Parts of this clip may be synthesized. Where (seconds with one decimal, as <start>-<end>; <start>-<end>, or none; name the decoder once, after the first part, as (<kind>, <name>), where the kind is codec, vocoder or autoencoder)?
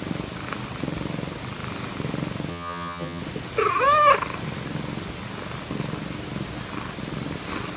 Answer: 2.5-3.2 (vocoder, HiFi-GAN)